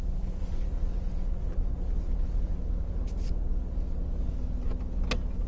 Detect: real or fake real